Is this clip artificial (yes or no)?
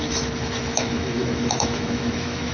yes